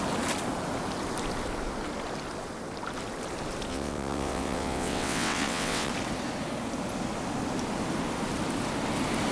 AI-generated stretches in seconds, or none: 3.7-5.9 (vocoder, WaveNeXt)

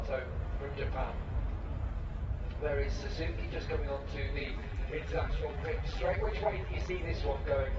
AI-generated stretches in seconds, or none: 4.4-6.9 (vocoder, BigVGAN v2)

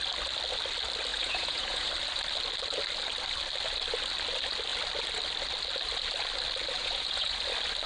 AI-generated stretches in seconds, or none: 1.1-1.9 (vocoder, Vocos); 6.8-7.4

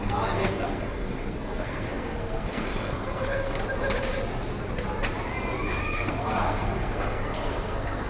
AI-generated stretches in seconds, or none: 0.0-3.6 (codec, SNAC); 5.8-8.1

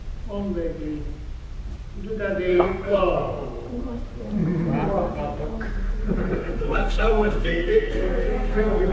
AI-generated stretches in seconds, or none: 2.5-3.0 (codec, SNAC); 6.2-8.9

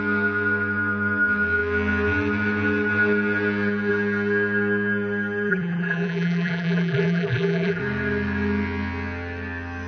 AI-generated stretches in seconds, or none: 5.5-7.8 (vocoder, BigVGAN v2)